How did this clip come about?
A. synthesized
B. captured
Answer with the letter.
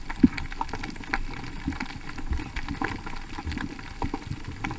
B